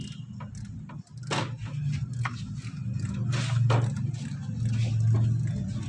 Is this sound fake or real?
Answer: real